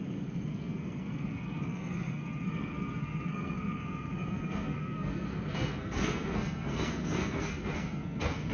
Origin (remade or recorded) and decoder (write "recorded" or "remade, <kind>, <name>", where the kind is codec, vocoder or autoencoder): remade, codec, SNAC